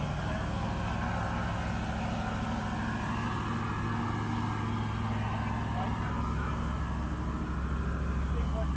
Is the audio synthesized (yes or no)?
no